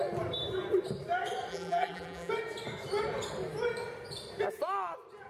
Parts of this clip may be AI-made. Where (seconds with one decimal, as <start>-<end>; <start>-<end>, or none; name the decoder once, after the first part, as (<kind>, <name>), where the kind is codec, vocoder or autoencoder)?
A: 1.5-2.3 (vocoder, BigVGAN v2)